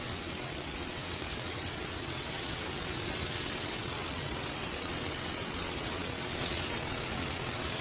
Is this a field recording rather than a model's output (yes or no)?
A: no